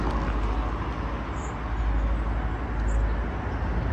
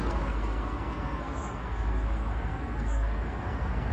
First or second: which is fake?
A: second